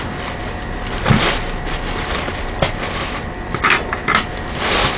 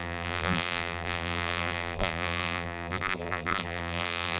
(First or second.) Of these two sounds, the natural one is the first